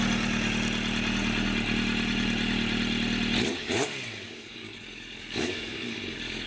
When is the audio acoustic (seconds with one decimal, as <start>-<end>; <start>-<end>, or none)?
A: 0.0-3.5